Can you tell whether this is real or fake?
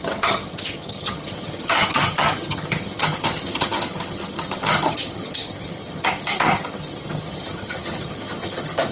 fake